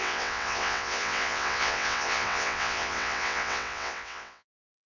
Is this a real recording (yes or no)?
no